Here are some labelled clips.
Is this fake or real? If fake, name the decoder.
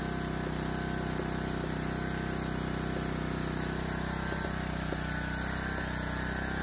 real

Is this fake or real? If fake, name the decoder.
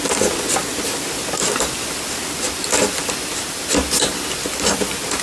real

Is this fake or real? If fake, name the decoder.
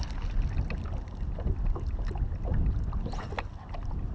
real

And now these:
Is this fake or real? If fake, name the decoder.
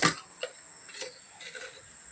real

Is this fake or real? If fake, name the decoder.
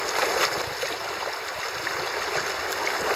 real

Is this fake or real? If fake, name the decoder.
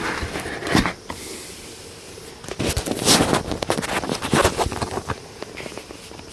real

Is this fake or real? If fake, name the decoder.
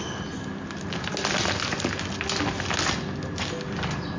real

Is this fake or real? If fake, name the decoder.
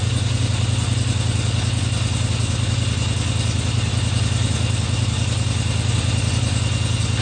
real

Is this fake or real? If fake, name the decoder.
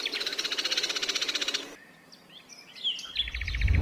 fake, vocoder, BigVGAN v2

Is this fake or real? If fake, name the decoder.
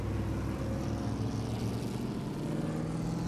real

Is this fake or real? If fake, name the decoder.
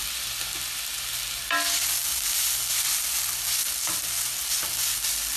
real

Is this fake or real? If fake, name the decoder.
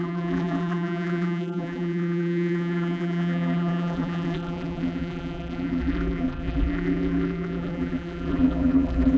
fake, vocoder, BigVGAN v2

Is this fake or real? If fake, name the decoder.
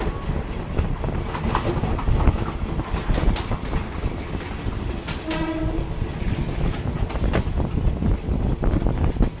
real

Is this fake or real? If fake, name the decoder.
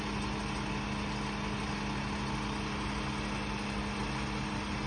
real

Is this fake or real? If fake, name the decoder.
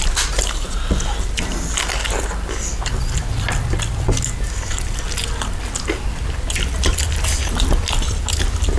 real